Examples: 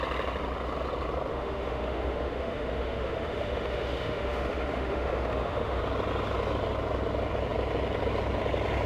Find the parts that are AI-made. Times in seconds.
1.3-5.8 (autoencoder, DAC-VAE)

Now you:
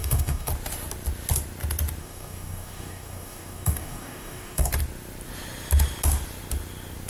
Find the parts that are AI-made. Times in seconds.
0.0-0.5 (codec, DAC); 2.0-4.7

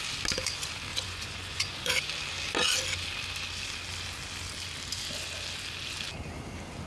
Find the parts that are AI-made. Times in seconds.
0.9-2.1 (vocoder, Vocos)

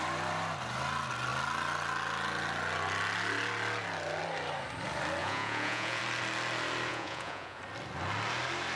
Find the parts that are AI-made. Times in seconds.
5.2-6.0 (vocoder, Vocos); 6.9-7.6